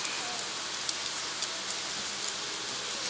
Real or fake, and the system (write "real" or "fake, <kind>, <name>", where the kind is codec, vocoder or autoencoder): real